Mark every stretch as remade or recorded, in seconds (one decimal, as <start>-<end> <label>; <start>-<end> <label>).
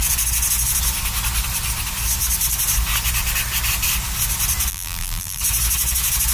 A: 0.0-4.7 recorded; 4.7-5.4 remade; 5.4-6.3 recorded